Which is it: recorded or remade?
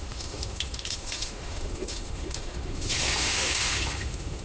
remade